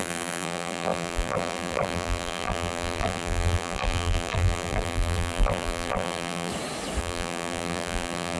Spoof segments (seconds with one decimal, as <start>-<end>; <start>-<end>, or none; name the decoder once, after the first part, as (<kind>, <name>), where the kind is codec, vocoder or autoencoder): 0.0-6.5 (vocoder, BigVGAN v2); 7.0-8.4

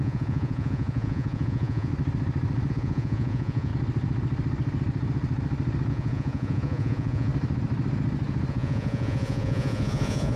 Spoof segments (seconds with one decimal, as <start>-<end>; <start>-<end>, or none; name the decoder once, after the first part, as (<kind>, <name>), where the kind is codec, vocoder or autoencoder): 0.0-1.9 (vocoder, Vocos); 2.7-3.7; 5.9-7.3; 8.5-10.4

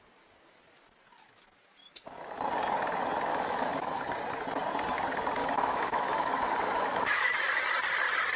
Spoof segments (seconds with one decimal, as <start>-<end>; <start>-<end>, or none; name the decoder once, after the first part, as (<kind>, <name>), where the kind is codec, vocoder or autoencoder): 3.3-4.0 (autoencoder, DAC-VAE); 5.4-7.3